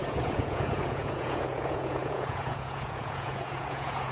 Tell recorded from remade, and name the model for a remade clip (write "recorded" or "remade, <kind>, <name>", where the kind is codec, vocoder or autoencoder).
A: remade, vocoder, Vocos